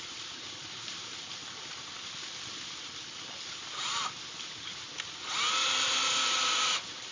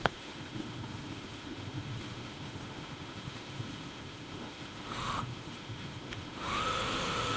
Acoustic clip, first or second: first